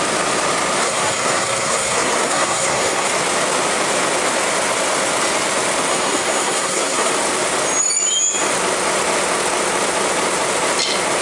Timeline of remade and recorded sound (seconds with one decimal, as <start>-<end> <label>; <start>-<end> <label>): 0.0-0.8 recorded; 0.8-3.1 remade; 3.1-5.9 recorded; 5.9-7.1 remade; 7.1-11.2 recorded